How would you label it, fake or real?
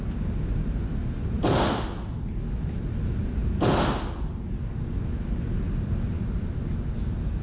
real